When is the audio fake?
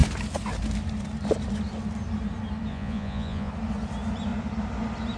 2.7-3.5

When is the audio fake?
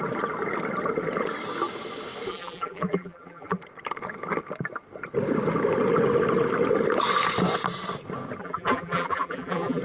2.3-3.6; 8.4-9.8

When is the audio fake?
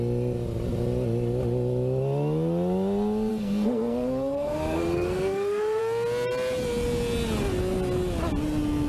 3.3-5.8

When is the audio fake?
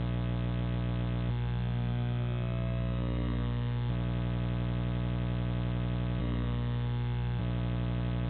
1.3-3.9; 6.2-7.4